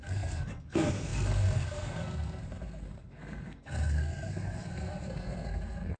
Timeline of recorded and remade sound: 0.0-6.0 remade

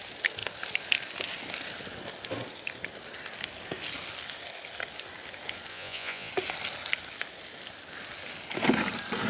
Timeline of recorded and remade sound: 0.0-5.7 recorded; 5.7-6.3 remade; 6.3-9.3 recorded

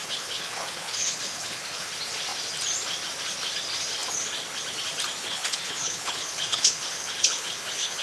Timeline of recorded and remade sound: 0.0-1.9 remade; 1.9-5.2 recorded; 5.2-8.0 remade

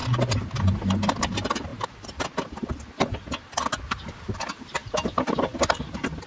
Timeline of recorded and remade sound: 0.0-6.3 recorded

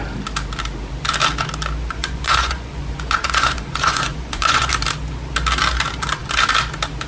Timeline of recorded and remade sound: 0.0-2.0 recorded; 2.0-4.7 remade; 4.7-7.1 recorded